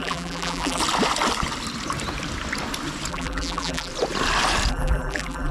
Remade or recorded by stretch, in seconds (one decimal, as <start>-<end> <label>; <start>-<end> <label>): 0.0-0.8 remade; 0.8-3.1 recorded; 3.1-3.9 remade; 3.9-4.7 recorded; 4.7-5.5 remade